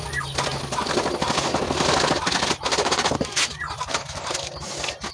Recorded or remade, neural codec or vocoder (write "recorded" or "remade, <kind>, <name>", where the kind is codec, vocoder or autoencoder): recorded